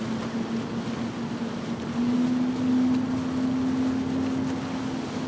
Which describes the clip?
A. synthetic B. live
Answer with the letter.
B